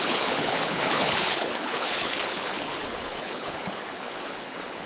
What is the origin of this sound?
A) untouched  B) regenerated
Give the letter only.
B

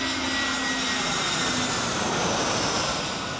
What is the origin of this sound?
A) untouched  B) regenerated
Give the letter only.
A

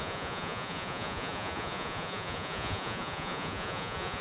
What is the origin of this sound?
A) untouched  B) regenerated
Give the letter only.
B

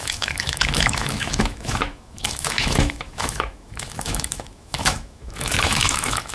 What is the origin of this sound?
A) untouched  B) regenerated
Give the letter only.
B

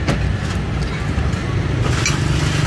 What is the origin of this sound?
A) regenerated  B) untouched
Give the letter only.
B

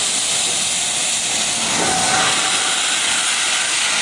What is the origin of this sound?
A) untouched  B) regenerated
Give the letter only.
A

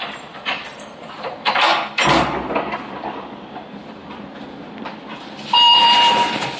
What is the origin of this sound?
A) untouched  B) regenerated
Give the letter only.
B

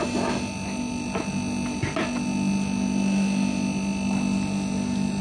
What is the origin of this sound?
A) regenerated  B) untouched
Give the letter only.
B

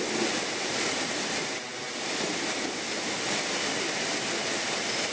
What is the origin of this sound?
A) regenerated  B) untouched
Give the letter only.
B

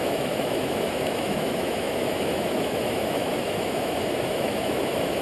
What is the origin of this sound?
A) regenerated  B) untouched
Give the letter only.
A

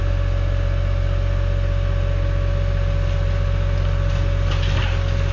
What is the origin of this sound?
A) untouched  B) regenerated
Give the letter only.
A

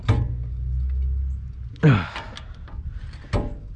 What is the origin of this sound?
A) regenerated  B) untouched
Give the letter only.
B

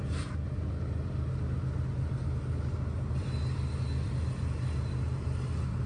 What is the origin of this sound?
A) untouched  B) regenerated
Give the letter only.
A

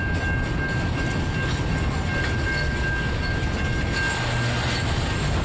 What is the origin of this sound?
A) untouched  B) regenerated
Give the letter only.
A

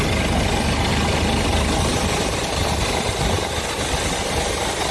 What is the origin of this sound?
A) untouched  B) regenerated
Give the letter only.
A